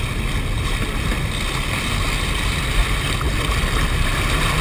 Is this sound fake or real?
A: real